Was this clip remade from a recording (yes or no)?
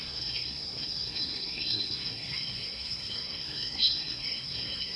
yes